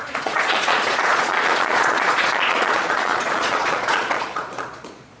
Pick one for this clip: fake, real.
fake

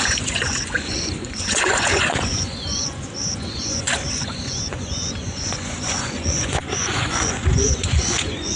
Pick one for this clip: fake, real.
fake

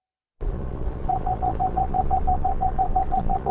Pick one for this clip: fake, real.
fake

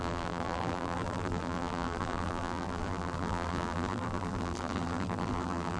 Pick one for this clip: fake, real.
fake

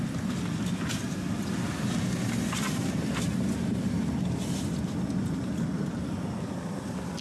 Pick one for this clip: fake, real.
real